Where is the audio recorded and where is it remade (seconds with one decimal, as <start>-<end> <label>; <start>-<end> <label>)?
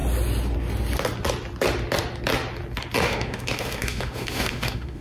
0.0-3.0 recorded; 3.0-5.0 remade